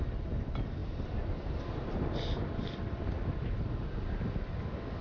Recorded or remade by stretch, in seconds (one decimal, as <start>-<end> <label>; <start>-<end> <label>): 0.0-0.8 recorded; 0.8-3.8 remade; 3.8-5.0 recorded